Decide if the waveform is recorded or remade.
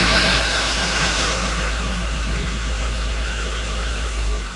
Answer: remade